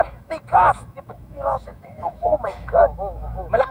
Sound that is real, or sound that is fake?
fake